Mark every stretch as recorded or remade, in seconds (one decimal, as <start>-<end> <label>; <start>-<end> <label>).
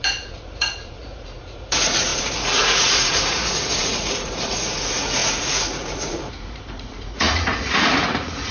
0.0-8.5 remade